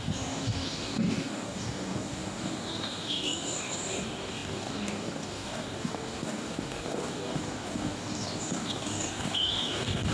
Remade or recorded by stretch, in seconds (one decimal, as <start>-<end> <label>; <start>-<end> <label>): 0.0-10.1 remade